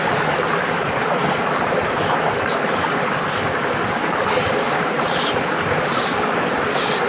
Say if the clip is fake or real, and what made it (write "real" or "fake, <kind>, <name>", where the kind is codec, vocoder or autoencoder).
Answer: real